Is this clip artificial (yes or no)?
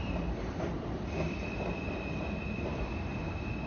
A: no